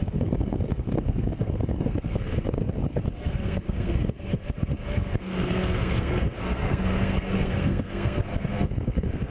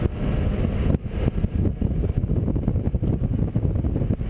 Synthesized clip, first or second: first